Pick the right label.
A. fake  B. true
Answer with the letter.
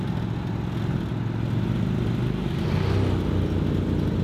B